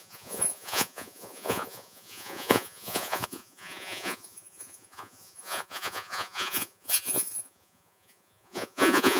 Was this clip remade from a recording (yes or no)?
yes